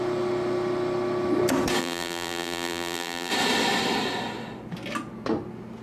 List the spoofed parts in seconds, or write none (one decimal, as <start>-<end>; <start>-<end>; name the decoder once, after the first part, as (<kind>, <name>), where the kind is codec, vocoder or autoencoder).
1.8-3.3 (vocoder, BigVGAN v2)